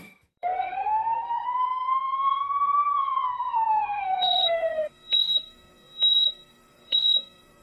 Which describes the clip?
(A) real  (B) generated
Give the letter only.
B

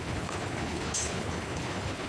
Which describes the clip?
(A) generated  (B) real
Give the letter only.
A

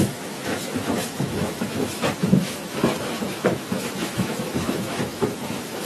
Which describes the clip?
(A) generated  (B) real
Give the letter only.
A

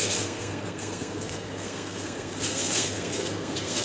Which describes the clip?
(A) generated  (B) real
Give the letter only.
A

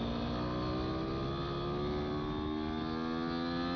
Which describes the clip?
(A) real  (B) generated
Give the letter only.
A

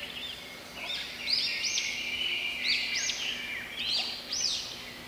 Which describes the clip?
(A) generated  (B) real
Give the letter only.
B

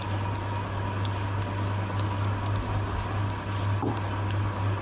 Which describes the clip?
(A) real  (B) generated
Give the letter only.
A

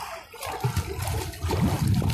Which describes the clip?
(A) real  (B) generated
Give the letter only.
A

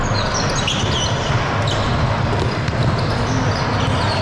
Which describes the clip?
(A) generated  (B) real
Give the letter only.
B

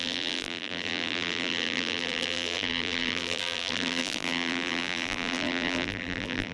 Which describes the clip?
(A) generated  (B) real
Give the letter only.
A